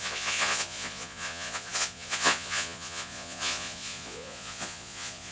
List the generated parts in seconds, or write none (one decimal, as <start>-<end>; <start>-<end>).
0.0-5.3